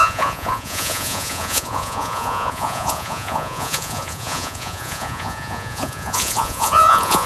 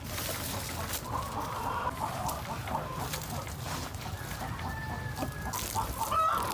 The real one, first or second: second